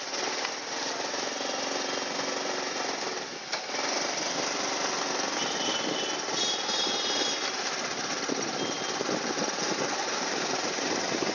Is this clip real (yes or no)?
yes